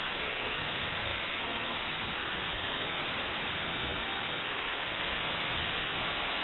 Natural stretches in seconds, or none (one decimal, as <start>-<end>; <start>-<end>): 3.0-3.5